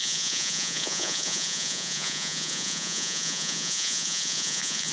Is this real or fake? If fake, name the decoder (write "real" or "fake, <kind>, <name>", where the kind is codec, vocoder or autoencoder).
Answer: fake, vocoder, Vocos